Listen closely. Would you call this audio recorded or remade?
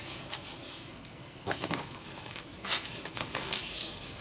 remade